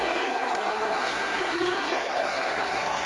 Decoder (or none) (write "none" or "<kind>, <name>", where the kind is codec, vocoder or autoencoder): codec, SNAC